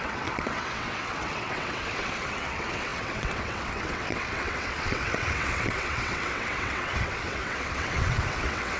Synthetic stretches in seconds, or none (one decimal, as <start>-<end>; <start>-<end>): 0.0-8.8